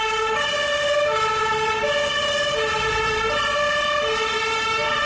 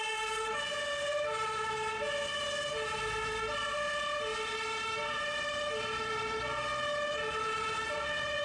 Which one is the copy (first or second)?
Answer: first